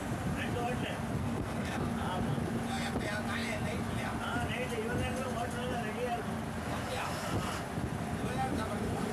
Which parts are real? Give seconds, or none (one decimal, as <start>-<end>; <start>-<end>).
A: 0.0-1.2; 1.8-9.1